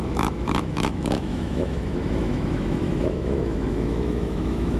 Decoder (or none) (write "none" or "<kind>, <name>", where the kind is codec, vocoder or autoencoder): autoencoder, DAC-VAE